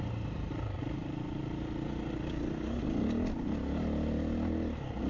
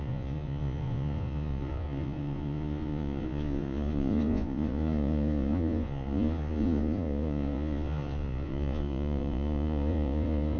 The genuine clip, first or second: first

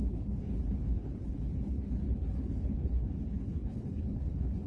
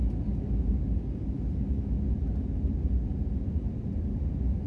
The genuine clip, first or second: second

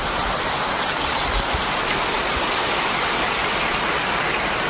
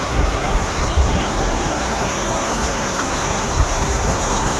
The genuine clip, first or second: first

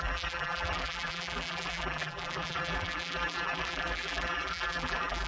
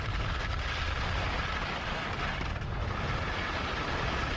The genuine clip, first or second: second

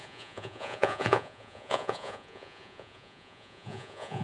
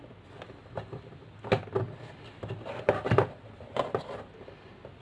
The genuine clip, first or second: second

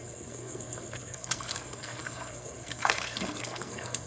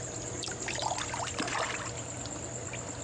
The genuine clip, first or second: second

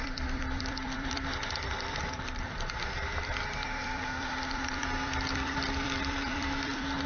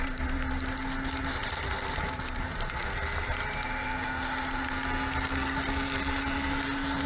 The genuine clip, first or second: second